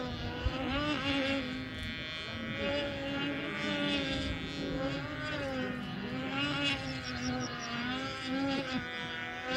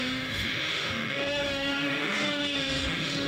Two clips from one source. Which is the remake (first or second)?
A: second